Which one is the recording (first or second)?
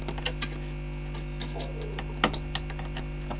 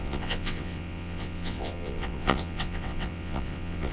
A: first